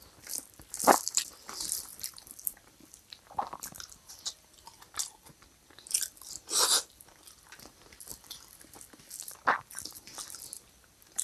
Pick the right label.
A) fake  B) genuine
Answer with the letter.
A